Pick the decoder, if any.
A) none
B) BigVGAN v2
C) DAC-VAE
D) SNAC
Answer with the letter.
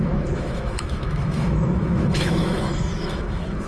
C